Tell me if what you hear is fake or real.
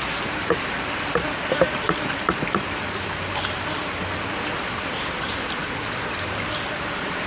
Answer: fake